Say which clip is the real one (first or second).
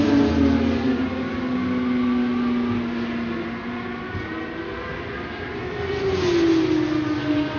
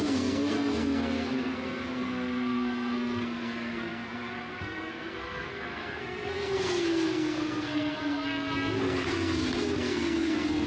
first